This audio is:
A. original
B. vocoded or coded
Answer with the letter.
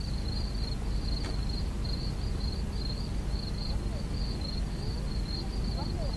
A